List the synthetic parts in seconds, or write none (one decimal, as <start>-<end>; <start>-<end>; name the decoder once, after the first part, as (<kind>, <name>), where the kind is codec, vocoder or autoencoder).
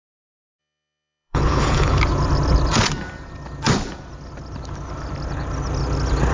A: 0.6-2.0 (codec, HILCodec)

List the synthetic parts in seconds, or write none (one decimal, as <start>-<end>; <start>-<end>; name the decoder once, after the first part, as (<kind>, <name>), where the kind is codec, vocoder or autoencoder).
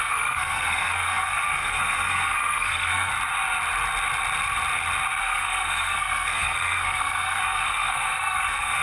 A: 0.0-3.1 (codec, SNAC); 5.2-8.8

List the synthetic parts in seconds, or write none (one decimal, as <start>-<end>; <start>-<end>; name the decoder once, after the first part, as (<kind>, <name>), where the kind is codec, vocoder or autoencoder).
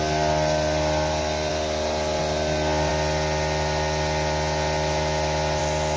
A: none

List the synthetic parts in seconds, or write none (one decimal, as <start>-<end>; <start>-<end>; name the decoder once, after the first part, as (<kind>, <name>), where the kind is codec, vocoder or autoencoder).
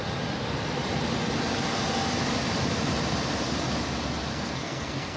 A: 4.3-5.2 (codec, SNAC)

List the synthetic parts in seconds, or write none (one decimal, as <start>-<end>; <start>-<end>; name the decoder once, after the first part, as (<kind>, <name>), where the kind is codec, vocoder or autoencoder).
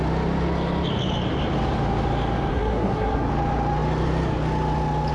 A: 2.5-3.3 (codec, SNAC)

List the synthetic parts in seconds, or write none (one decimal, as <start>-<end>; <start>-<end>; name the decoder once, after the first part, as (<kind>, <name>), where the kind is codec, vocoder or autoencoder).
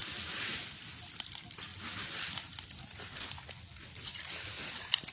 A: 1.7-5.1 (vocoder, BigVGAN v2)